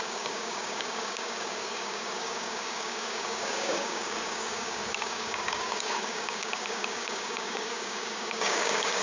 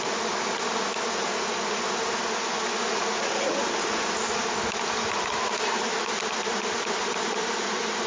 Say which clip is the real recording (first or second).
second